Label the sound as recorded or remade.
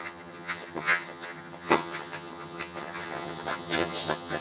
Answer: remade